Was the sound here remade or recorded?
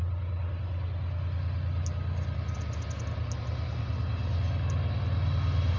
recorded